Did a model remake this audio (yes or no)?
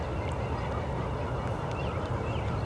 no